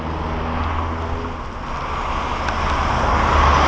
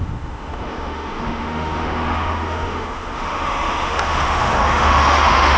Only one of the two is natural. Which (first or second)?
first